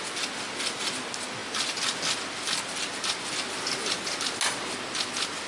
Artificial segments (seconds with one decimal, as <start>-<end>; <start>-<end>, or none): none